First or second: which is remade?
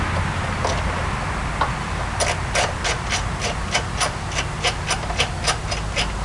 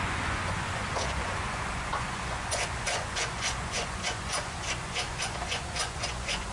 second